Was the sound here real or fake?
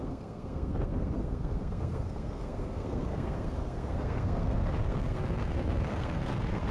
fake